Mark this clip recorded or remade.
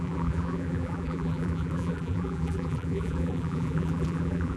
remade